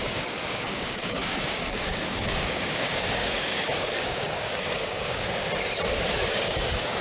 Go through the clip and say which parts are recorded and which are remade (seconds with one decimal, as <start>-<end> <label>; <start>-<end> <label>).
0.0-5.4 remade; 5.4-6.1 recorded; 6.1-7.0 remade